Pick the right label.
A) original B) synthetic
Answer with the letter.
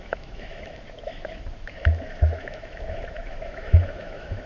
B